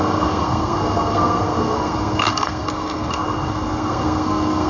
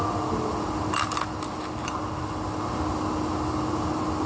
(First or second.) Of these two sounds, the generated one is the first